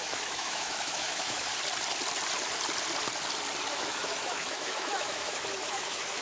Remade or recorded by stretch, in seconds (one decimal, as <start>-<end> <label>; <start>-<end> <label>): 0.0-1.5 remade; 1.5-3.7 recorded; 3.7-6.2 remade